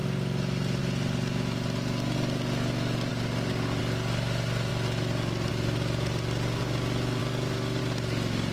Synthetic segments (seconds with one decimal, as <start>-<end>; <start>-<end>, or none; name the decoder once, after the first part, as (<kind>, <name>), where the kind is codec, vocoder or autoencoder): 3.1-3.8 (vocoder, BigVGAN v2); 7.2-7.8